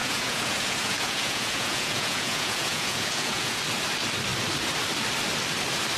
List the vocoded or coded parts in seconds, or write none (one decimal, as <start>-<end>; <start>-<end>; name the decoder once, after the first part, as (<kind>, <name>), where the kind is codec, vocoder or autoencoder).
0.0-3.6 (vocoder, Vocos)